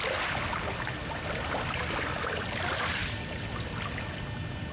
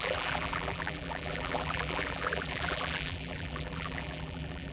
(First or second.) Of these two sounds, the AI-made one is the second